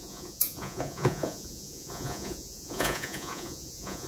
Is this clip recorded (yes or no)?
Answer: no